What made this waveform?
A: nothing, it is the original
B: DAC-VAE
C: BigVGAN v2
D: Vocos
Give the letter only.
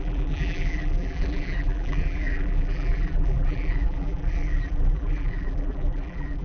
C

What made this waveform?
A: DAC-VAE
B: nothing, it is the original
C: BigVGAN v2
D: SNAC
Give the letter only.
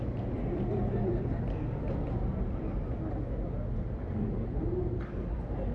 C